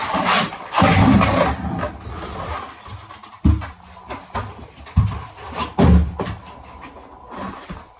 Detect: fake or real real